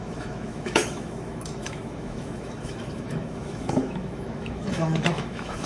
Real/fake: fake